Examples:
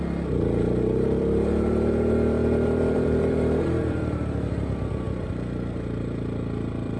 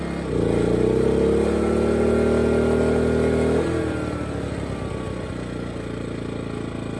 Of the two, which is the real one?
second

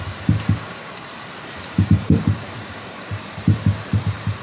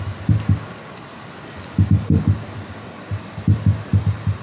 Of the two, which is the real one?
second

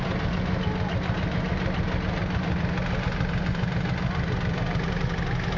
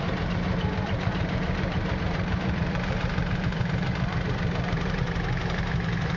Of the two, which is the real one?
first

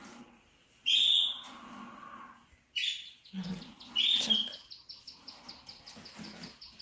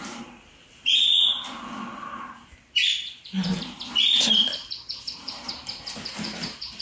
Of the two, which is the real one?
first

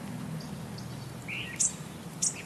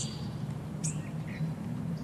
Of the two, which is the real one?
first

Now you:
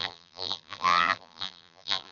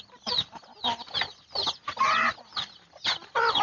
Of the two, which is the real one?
second